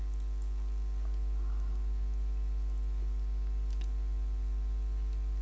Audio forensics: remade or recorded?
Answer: recorded